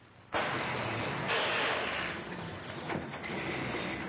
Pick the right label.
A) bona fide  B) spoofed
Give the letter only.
A